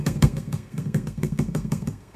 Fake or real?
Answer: fake